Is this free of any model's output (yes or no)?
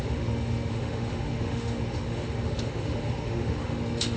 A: no